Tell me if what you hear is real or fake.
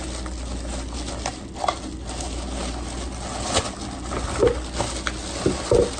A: real